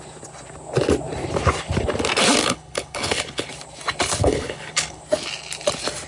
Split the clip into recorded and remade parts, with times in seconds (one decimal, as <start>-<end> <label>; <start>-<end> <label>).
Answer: 0.0-2.4 recorded; 2.4-3.5 remade; 3.5-4.2 recorded; 4.2-5.0 remade; 5.0-6.1 recorded